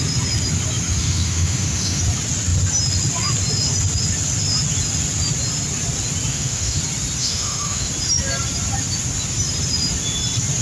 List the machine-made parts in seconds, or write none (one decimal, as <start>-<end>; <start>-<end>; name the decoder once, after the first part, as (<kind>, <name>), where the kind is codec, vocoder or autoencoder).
1.0-2.0 (autoencoder, DAC-VAE); 6.3-6.8; 7.2-7.9